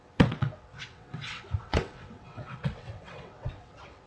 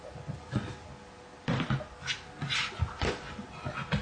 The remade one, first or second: first